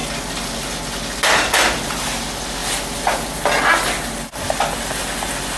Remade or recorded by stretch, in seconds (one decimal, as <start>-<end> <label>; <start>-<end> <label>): 0.0-5.6 recorded

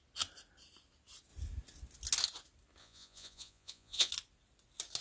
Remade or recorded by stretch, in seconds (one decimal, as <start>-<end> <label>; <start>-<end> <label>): 0.0-2.8 recorded; 2.8-4.1 remade; 4.1-5.0 recorded

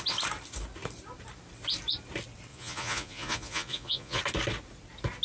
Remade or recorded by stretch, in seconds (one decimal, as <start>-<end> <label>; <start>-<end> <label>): 0.0-2.5 recorded; 2.5-4.2 remade; 4.2-5.2 recorded